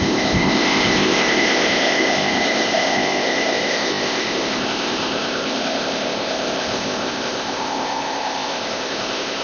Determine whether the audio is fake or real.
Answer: fake